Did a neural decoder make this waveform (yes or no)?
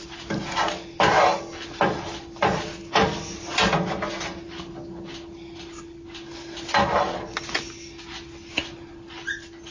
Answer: no